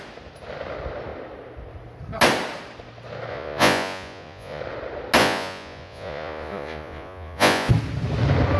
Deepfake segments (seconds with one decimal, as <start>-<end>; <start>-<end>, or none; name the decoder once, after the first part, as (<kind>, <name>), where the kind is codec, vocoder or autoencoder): 3.3-4.6 (vocoder, Vocos); 5.2-7.7